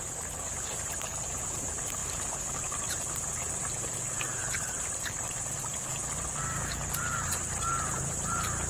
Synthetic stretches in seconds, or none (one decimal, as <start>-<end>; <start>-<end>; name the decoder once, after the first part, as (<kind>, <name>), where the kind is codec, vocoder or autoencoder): 0.0-6.0 (vocoder, BigVGAN v2); 7.5-8.7